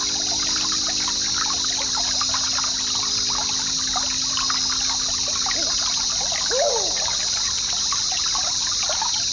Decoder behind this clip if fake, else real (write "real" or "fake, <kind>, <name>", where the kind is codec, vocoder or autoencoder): real